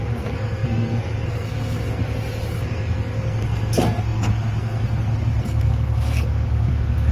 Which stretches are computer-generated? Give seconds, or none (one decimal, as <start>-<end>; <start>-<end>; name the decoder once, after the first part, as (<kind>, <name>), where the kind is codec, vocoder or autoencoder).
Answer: 0.0-2.0 (codec, SNAC); 2.5-7.1